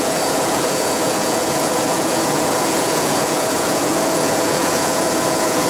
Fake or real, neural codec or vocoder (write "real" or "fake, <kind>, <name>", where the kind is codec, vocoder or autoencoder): fake, vocoder, Vocos